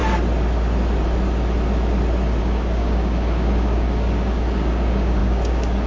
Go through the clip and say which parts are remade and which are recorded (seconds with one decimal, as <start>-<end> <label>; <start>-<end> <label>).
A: 0.0-2.4 recorded; 2.4-5.9 remade